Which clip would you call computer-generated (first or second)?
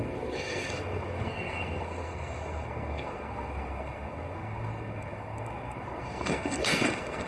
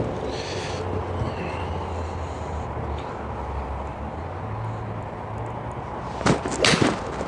first